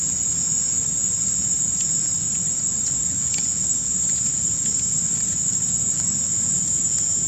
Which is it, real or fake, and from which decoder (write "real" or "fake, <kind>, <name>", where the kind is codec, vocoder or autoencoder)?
fake, vocoder, Vocos